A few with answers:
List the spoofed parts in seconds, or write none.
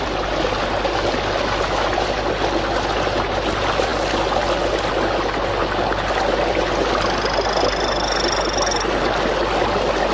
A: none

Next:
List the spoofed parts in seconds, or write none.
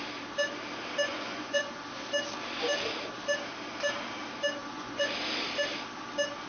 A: 1.1-1.8 (vocoder, Vocos); 4.6-5.1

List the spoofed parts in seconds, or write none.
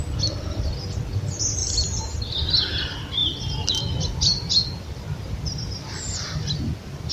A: none